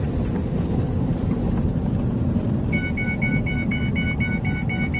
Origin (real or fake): real